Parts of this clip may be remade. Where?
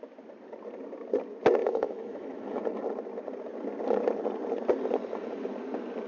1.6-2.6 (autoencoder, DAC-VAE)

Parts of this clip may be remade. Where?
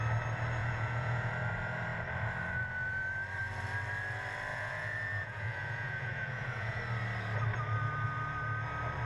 0.6-1.3 (vocoder, Vocos); 4.5-6.8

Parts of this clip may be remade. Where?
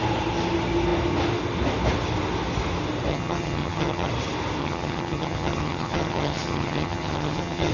3.1-4.1 (vocoder, HiFi-GAN); 4.6-7.7